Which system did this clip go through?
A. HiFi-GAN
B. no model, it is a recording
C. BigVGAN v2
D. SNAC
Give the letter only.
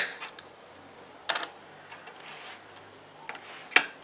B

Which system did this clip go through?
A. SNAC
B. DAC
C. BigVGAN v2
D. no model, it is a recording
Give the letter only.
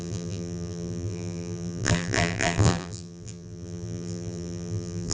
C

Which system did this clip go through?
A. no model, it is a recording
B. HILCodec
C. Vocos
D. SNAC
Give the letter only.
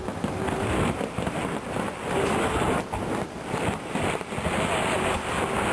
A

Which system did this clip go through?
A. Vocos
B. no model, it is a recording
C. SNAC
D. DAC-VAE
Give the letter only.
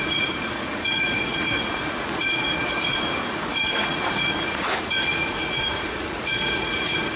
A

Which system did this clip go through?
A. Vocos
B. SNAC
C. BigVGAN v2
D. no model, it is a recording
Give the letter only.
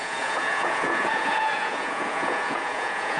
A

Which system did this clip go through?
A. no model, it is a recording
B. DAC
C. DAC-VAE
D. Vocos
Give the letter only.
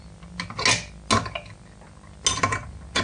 A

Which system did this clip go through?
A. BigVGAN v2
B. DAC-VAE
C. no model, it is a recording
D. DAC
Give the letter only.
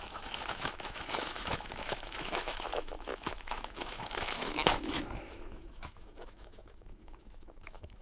B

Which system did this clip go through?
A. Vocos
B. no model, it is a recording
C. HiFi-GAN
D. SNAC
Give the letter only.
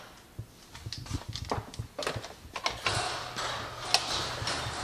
B